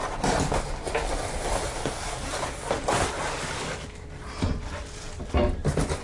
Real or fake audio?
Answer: real